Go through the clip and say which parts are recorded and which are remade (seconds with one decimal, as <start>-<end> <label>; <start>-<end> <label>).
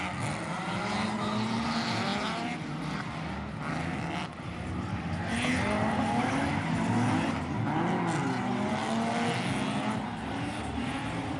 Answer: 0.0-11.4 recorded